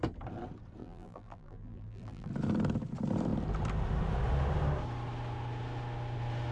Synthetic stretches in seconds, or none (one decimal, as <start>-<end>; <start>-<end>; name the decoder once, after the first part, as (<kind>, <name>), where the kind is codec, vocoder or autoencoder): 0.8-2.3 (vocoder, BigVGAN v2)